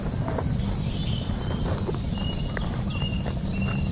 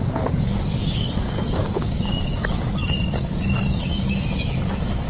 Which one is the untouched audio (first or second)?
first